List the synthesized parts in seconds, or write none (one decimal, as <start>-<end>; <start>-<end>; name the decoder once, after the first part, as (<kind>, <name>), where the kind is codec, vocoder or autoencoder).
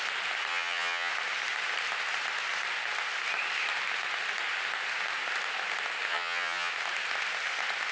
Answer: 0.5-1.1 (vocoder, HiFi-GAN); 6.1-6.7